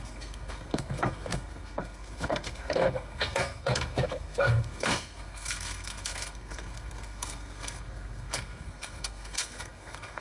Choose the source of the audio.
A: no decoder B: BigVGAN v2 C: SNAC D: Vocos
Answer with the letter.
C